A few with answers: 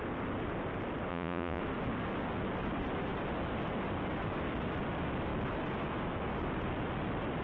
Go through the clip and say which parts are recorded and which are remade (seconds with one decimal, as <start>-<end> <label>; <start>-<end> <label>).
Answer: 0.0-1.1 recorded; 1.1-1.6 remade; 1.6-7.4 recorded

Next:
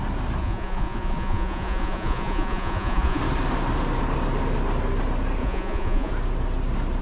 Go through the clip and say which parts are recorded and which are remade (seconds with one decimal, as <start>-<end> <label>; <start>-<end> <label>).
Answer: 0.0-0.4 recorded; 0.4-3.2 remade; 3.2-5.4 recorded; 5.4-6.1 remade; 6.1-7.0 recorded

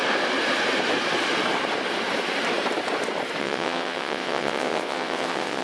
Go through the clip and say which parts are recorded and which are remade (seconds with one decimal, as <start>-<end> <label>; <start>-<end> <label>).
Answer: 0.0-3.4 recorded; 3.4-5.6 remade

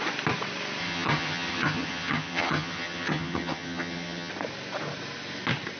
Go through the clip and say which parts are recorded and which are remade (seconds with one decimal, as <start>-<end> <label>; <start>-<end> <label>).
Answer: 0.0-0.8 recorded; 0.8-4.3 remade; 4.3-5.8 recorded